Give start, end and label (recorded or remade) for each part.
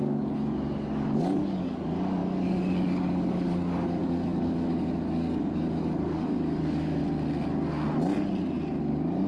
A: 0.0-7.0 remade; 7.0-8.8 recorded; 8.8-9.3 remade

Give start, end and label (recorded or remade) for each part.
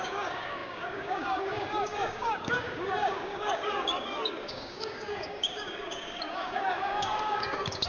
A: 0.0-7.9 remade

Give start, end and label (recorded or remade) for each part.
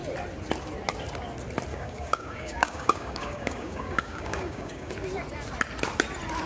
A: 0.0-1.7 recorded; 1.7-4.9 remade; 4.9-6.5 recorded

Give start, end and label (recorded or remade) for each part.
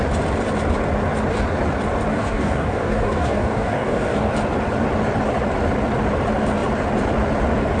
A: 0.0-2.1 recorded; 2.1-4.3 remade; 4.3-7.8 recorded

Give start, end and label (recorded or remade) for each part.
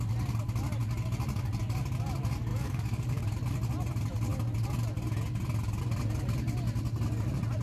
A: 0.0-2.5 recorded; 2.5-3.2 remade; 3.2-7.6 recorded